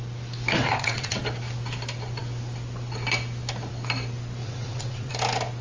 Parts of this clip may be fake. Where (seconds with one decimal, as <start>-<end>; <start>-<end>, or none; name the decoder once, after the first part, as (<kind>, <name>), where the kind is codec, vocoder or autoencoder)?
0.6-1.2 (vocoder, WaveNeXt); 4.4-5.1